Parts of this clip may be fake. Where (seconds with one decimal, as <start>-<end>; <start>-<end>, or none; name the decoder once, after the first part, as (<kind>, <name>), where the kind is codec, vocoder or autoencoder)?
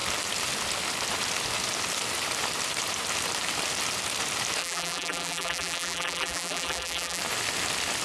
4.6-7.2 (vocoder, BigVGAN v2)